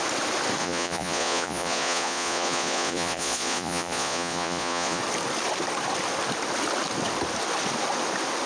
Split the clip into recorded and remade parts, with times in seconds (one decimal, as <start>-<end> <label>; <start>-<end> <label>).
0.0-0.6 recorded; 0.6-5.0 remade; 5.0-8.5 recorded